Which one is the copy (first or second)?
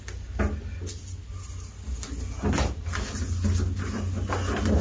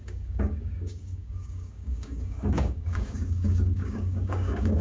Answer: second